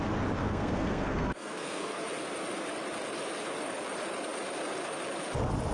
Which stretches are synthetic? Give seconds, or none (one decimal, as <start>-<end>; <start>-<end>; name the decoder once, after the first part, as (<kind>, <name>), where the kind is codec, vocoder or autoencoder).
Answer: 0.4-2.0 (codec, SNAC)

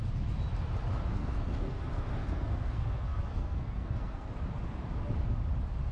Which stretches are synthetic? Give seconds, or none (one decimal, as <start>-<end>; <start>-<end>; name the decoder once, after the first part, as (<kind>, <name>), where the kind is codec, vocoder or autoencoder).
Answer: 1.1-4.3 (codec, SNAC)

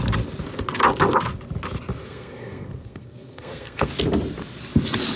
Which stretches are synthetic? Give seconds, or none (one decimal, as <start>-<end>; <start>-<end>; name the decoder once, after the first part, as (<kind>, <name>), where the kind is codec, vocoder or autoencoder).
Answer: 2.0-3.9 (codec, SNAC)

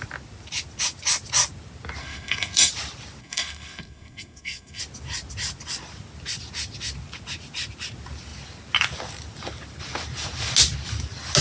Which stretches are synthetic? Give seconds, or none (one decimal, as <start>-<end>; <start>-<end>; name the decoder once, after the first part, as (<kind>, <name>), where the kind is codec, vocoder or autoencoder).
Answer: 2.0-2.7 (codec, SNAC); 3.2-4.8

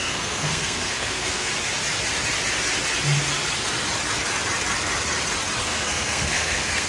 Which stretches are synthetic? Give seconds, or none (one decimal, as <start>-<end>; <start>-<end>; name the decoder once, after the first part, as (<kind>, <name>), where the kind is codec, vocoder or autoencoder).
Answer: 0.0-1.5 (codec, SNAC); 5.6-6.9

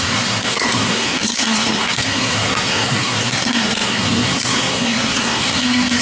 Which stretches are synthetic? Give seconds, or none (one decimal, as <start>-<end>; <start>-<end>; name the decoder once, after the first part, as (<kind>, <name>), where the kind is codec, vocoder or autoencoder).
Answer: 0.0-6.0 (codec, SNAC)

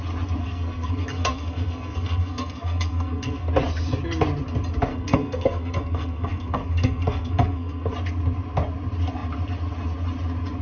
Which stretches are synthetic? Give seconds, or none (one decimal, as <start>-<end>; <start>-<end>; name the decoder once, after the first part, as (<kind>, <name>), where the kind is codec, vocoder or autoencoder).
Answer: 0.4-3.5 (codec, SNAC); 4.9-7.9

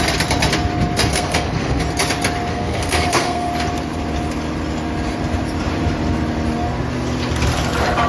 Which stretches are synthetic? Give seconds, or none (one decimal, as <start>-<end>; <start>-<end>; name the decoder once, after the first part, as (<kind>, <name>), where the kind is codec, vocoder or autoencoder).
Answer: 1.1-1.8 (codec, SNAC); 2.5-3.5